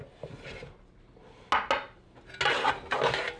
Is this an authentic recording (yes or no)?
yes